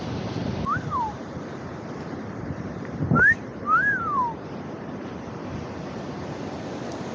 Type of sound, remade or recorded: remade